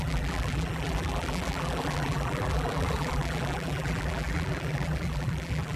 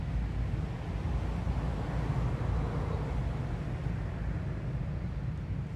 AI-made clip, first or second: first